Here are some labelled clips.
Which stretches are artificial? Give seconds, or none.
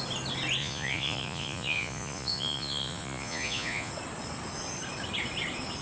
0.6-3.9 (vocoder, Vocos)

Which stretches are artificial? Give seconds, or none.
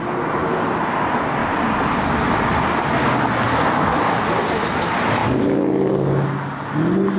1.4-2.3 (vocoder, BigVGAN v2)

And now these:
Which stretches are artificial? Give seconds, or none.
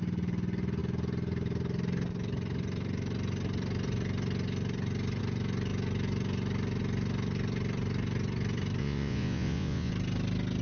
8.8-9.9 (vocoder, Vocos)